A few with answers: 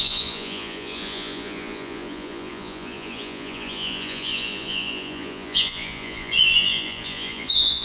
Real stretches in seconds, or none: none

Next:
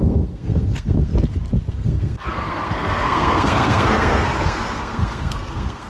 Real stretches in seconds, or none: 1.1-1.7

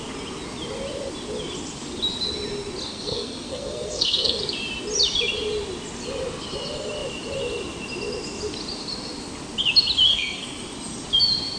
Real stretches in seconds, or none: 0.0-2.9; 4.4-10.1; 10.6-11.6